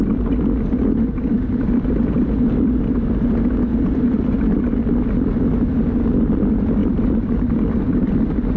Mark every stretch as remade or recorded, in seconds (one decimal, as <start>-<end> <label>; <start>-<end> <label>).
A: 0.0-3.7 recorded; 3.7-4.6 remade; 4.6-6.8 recorded; 6.8-8.1 remade; 8.1-8.6 recorded